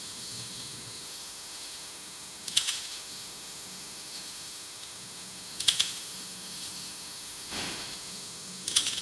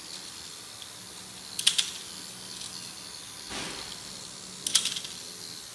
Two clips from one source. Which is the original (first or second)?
second